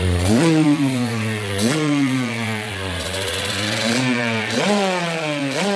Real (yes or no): no